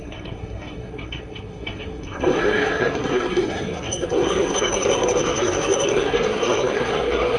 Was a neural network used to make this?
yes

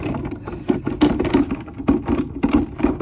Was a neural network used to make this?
no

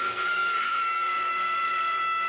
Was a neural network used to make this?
yes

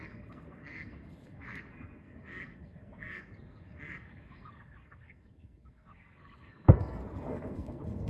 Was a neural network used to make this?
yes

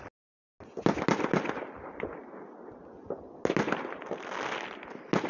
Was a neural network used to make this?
no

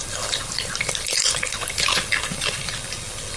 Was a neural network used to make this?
no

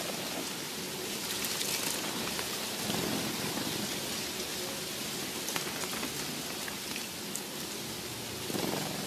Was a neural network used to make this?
no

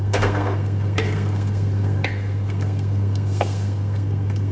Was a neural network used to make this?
yes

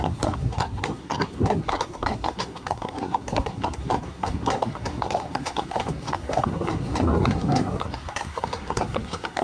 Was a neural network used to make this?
yes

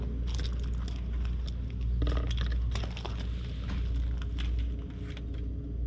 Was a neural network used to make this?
no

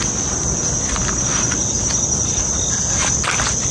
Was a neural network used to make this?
no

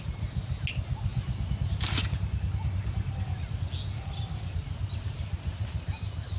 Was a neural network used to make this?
no